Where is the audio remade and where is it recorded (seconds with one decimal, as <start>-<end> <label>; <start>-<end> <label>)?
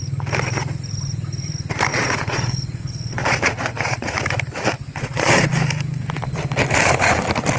0.0-1.9 recorded; 1.9-4.1 remade; 4.1-4.9 recorded; 4.9-5.5 remade; 5.5-7.6 recorded